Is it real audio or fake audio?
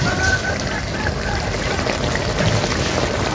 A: real